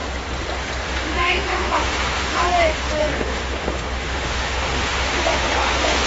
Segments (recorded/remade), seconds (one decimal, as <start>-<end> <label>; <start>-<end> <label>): 0.0-0.8 recorded; 0.8-6.1 remade